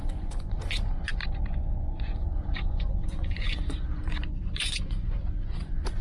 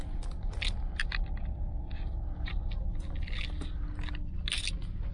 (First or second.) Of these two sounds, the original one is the second